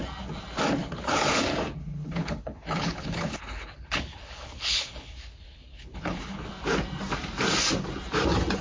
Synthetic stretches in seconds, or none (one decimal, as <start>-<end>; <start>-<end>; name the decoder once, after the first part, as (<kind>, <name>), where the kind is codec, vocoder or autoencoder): 0.8-1.4 (codec, HILCodec); 1.8-6.5